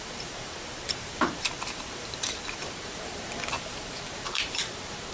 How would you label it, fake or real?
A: fake